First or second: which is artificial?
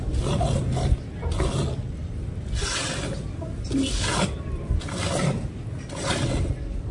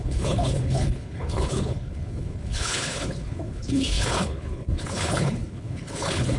second